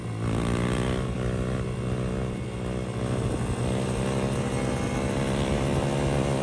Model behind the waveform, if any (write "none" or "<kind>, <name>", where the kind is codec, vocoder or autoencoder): none